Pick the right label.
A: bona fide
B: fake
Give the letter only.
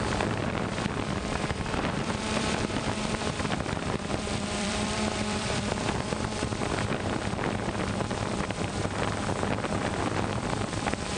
B